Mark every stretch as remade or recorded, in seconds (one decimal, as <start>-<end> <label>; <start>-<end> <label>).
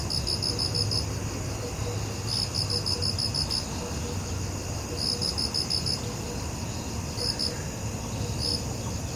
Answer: 0.0-9.2 recorded